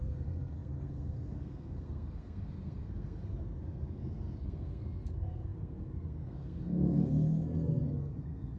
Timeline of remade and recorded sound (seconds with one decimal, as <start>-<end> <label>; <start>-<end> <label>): 0.0-8.6 remade

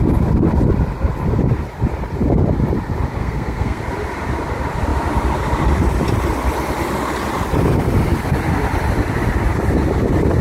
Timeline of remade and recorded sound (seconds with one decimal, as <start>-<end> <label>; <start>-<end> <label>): 0.0-3.2 recorded; 3.2-3.8 remade; 3.8-10.4 recorded